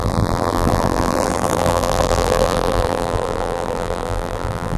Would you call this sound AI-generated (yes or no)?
yes